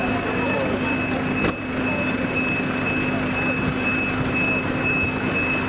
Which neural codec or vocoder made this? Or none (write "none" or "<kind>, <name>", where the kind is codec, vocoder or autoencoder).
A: none